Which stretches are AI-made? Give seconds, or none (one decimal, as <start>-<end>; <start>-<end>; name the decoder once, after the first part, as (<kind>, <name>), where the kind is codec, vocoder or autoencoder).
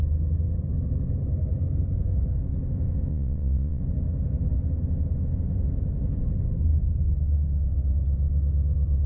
3.1-3.8 (vocoder, Vocos)